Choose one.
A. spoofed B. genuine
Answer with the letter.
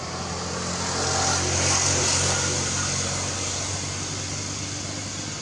B